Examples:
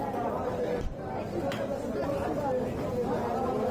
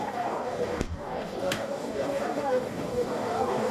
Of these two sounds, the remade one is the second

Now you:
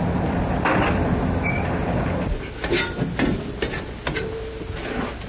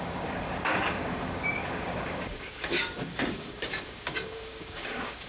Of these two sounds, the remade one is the second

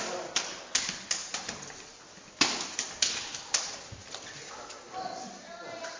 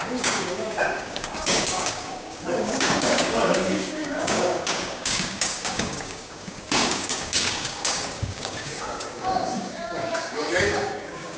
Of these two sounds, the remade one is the second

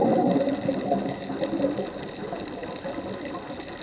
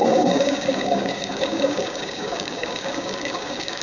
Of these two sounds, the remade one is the second